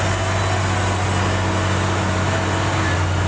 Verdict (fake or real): real